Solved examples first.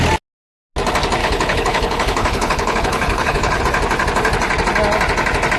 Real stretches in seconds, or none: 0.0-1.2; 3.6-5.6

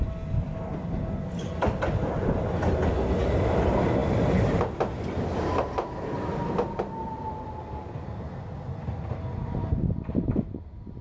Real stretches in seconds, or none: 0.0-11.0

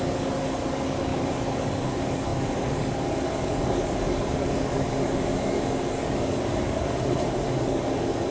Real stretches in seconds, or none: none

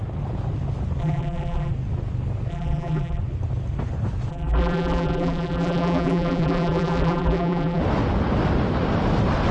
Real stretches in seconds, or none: 0.0-1.0; 1.7-2.5; 3.2-4.3; 7.8-9.5

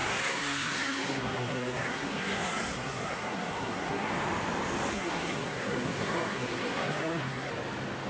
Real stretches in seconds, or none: 4.1-4.9; 7.5-8.1

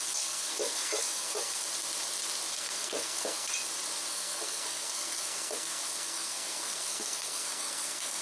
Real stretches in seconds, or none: 1.7-2.5; 3.5-4.1

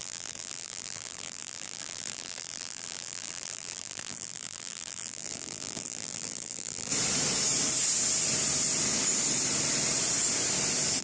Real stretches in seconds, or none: 6.9-11.0